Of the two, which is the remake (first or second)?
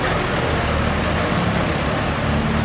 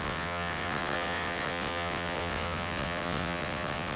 second